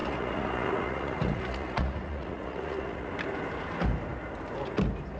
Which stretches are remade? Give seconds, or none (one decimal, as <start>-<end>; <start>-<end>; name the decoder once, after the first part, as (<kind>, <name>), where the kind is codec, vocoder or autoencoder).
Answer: 0.0-3.1 (vocoder, Vocos)